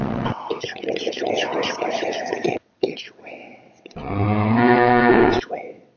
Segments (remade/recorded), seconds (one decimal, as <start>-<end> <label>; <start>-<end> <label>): 0.0-6.0 remade